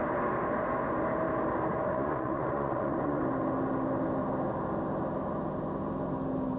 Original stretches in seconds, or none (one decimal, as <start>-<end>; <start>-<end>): 0.0-1.7; 3.2-6.6